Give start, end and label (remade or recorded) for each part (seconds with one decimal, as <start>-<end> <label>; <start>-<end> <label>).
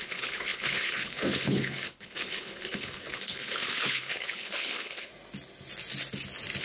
0.0-5.1 remade; 5.1-6.6 recorded